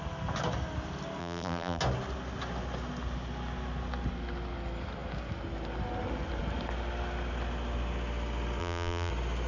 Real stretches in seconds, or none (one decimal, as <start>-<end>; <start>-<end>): 0.0-1.2; 1.8-8.6; 9.1-9.5